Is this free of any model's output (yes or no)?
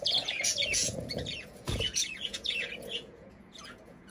no